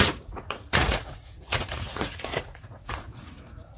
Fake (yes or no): yes